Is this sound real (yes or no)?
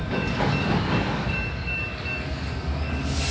no